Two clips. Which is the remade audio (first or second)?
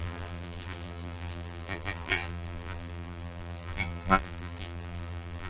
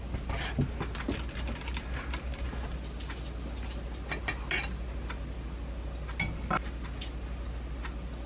first